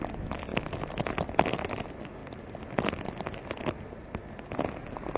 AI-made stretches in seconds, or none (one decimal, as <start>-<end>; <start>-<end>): none